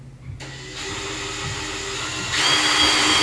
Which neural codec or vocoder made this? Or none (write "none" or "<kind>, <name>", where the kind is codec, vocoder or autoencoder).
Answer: none